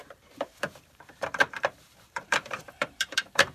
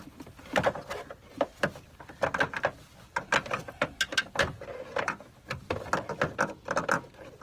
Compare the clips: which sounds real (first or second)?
second